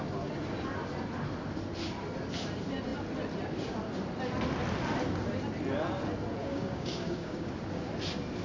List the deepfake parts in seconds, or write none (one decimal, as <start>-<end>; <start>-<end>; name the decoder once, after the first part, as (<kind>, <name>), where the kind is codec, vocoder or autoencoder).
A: 6.4-7.5 (codec, DAC)